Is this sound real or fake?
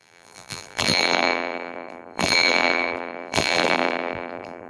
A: fake